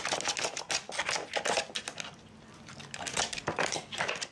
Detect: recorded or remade recorded